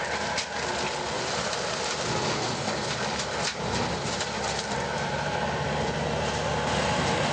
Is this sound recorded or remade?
recorded